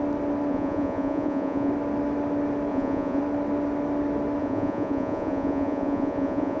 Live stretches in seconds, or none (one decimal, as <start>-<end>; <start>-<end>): 0.0-0.5; 1.7-2.7; 3.2-4.4